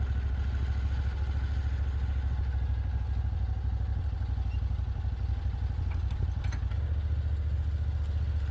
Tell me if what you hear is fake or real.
real